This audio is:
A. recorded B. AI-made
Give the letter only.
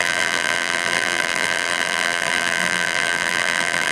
B